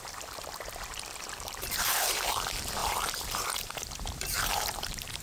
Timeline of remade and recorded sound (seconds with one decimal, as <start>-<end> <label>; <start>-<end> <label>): 0.0-5.2 remade